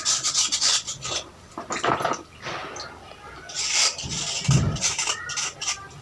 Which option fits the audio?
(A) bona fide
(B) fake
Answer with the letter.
A